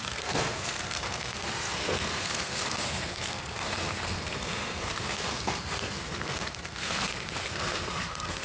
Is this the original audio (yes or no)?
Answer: no